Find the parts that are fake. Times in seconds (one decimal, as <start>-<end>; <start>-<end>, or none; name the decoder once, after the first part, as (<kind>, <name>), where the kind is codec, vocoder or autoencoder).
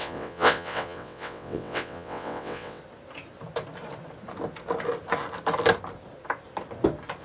0.0-2.8 (vocoder, WaveNeXt)